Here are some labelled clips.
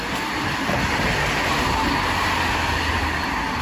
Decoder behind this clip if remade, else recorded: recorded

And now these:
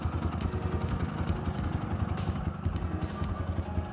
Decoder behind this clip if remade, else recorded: recorded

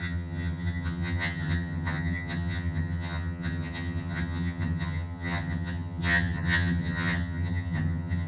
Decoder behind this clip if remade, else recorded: remade, vocoder, HiFi-GAN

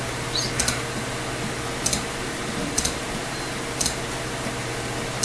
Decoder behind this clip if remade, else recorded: recorded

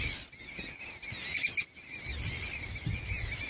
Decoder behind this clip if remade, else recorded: recorded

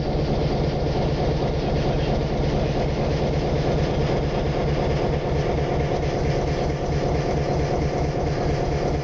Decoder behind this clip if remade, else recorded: recorded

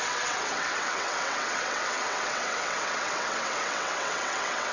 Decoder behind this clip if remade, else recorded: remade, vocoder, WaveNeXt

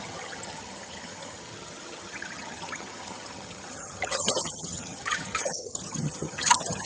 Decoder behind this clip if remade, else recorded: remade, vocoder, HiFi-GAN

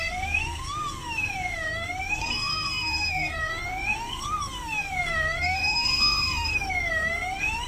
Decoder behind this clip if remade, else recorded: remade, codec, SNAC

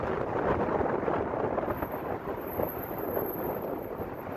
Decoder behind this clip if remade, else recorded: recorded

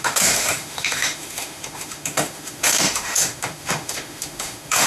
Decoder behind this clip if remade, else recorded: remade, autoencoder, DAC-VAE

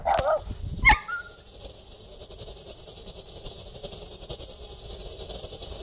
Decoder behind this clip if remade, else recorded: recorded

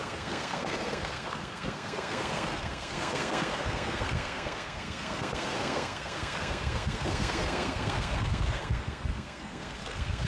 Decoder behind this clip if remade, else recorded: remade, codec, SNAC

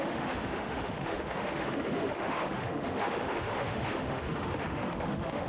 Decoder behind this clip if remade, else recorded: remade, autoencoder, DAC-VAE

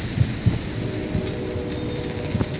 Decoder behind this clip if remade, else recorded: recorded